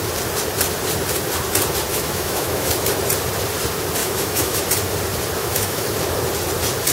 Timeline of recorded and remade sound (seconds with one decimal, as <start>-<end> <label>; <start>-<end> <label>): 0.0-1.9 recorded; 1.9-2.7 remade; 2.7-4.0 recorded; 4.0-4.6 remade; 4.6-5.4 recorded; 5.4-5.9 remade; 5.9-6.9 recorded